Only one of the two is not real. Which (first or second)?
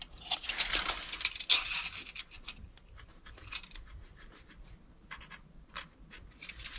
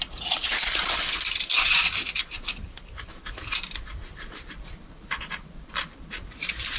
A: second